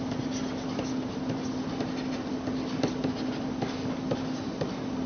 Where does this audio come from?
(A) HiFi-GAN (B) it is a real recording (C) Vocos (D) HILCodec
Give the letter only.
B